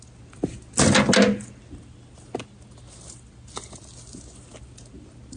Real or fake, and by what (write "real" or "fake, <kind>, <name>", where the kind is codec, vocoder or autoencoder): real